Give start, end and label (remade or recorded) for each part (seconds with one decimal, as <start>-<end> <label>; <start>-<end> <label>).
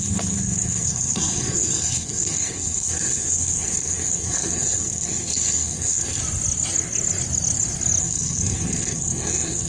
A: 0.0-6.2 remade; 6.2-8.0 recorded; 8.0-9.7 remade